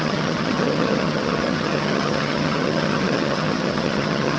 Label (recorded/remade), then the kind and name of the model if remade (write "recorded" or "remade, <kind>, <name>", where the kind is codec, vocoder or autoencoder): remade, vocoder, HiFi-GAN